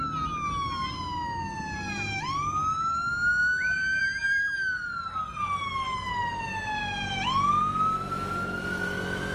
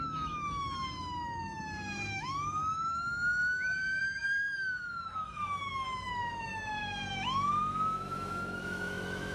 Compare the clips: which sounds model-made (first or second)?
second